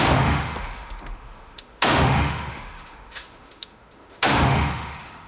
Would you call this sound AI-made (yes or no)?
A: yes